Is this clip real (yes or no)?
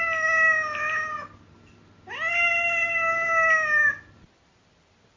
yes